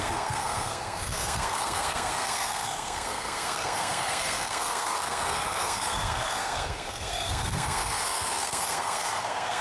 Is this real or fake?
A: fake